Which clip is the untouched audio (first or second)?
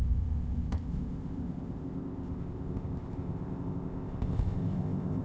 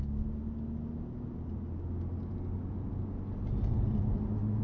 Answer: second